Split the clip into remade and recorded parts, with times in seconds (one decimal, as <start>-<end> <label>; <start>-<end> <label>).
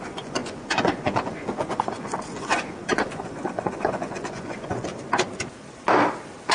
0.0-4.9 remade; 4.9-6.5 recorded